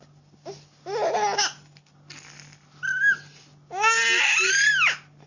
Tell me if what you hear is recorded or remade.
recorded